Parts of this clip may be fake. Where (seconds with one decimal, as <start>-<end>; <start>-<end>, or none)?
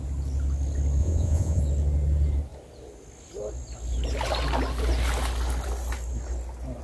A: 1.0-1.6